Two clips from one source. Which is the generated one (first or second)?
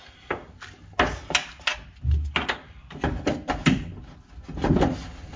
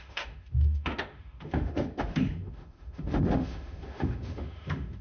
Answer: second